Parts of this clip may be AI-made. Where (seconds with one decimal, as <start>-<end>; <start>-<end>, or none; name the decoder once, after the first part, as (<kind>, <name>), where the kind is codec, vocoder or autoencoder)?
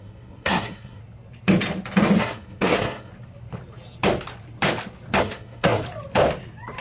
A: 0.0-1.0 (codec, SNAC); 2.2-3.1; 5.2-5.8